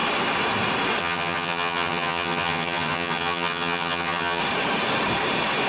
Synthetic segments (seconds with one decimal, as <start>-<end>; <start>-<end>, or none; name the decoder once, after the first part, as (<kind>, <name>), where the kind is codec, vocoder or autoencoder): 1.0-4.4 (vocoder, HiFi-GAN)